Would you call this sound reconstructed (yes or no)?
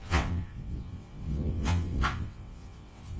yes